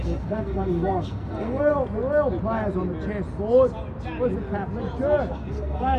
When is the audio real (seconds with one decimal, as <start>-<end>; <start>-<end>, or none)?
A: 1.7-5.3